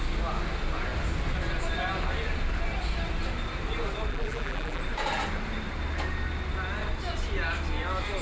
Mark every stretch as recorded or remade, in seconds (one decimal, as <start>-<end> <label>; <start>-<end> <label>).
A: 0.0-4.1 recorded; 4.1-4.8 remade; 4.8-8.2 recorded